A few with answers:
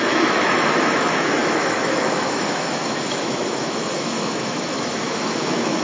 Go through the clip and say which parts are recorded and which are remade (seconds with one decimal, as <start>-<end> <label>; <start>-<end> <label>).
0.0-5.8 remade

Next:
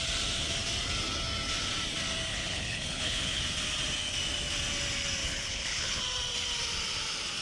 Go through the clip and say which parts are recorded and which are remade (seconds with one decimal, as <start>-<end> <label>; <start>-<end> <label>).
0.0-2.3 recorded; 2.3-3.4 remade; 3.4-5.2 recorded; 5.2-6.0 remade; 6.0-7.4 recorded

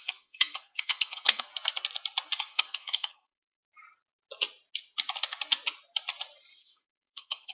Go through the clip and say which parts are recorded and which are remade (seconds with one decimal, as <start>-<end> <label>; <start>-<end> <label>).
0.0-1.5 remade; 1.5-2.4 recorded; 2.4-3.6 remade; 3.6-6.6 recorded; 6.6-7.5 remade